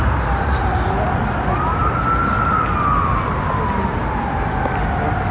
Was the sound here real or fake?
real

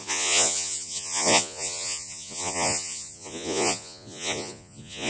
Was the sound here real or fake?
fake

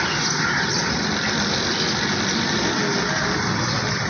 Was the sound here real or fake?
real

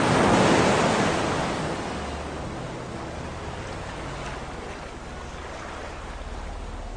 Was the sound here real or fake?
real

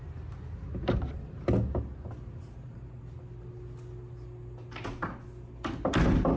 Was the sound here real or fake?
real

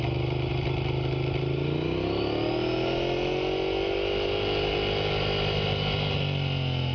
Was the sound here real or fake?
real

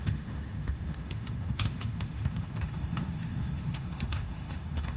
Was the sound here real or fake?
fake